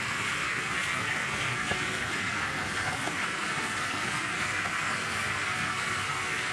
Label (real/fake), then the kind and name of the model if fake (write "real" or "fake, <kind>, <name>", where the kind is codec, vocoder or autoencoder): fake, codec, SNAC